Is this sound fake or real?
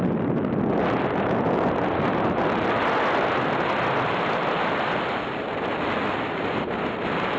real